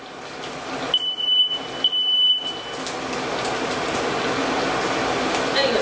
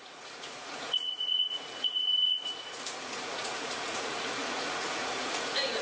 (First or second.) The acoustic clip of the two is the first